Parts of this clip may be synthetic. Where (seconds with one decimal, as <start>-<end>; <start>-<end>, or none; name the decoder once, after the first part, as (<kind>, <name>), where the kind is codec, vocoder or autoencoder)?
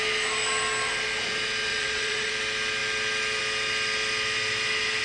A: 1.7-2.3 (vocoder, Vocos)